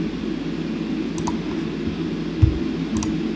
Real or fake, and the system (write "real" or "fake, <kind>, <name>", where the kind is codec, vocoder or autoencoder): real